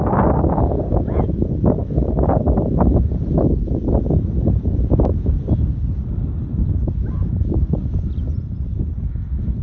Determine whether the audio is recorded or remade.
recorded